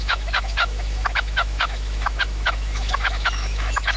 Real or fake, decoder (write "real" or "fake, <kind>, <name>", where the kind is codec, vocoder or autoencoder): fake, autoencoder, DAC-VAE